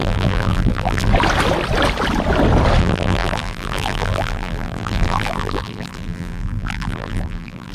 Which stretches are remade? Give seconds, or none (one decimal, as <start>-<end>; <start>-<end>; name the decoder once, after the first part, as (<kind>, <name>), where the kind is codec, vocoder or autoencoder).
0.0-1.1 (vocoder, BigVGAN v2); 2.8-7.7